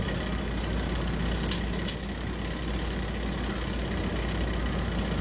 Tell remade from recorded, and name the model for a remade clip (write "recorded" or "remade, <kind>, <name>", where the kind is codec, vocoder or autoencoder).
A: recorded